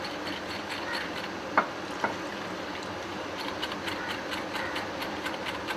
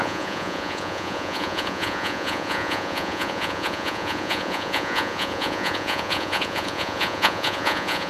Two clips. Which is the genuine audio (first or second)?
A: first